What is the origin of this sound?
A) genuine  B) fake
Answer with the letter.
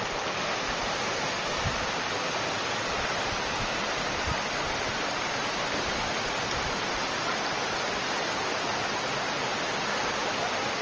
A